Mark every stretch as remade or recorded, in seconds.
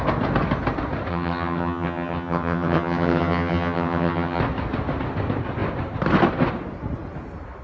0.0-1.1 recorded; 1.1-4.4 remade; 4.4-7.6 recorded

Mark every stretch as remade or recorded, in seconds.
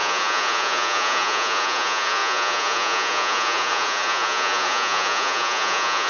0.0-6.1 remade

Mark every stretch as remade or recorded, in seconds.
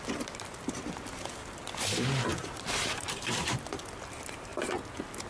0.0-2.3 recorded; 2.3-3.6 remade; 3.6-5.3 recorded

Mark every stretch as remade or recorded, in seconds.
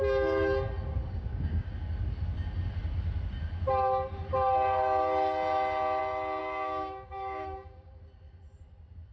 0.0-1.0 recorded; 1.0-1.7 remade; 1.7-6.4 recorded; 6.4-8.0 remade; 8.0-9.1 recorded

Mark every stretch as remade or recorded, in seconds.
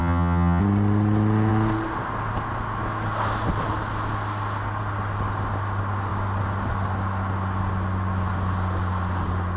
0.0-0.6 remade; 0.6-9.6 recorded